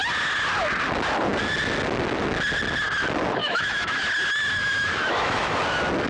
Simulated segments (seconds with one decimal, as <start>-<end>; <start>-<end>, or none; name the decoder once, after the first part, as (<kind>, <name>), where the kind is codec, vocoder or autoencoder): 3.4-4.0 (autoencoder, DAC-VAE); 4.6-5.6